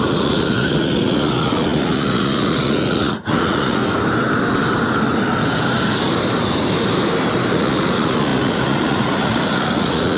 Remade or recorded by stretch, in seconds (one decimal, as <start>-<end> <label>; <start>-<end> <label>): 0.0-3.8 remade; 3.8-7.5 recorded; 7.5-10.2 remade